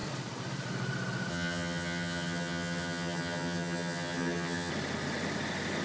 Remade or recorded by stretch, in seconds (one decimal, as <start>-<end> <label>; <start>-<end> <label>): 0.0-1.3 recorded; 1.3-4.7 remade; 4.7-5.8 recorded